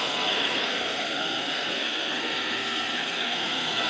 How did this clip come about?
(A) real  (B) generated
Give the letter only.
B